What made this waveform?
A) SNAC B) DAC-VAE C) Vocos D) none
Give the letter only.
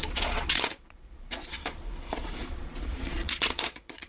C